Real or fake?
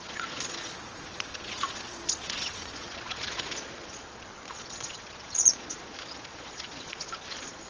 fake